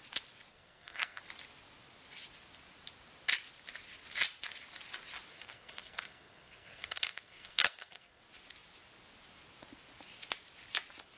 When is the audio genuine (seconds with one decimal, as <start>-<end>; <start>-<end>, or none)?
0.0-0.5; 1.2-5.3; 8.2-11.2